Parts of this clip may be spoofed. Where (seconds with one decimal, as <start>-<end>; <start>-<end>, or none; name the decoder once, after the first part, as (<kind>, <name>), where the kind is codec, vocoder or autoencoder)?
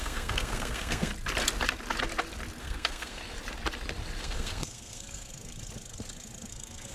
0.0-1.1 (codec, SNAC); 2.6-3.2; 4.2-5.3; 6.5-6.9